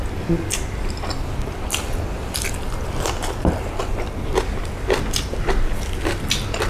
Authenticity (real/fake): fake